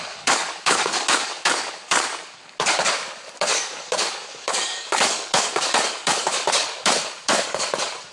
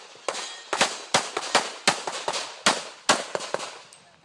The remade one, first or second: first